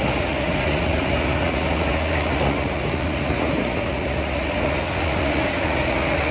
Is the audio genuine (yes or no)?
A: no